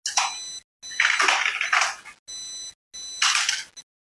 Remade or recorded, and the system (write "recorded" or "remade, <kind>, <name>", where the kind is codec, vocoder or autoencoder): recorded